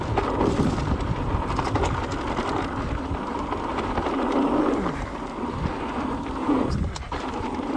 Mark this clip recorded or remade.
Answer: recorded